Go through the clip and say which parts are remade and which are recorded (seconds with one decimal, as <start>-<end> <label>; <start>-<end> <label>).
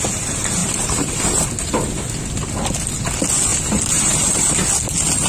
0.0-0.6 recorded; 0.6-1.1 remade; 1.1-3.5 recorded; 3.5-4.5 remade; 4.5-5.3 recorded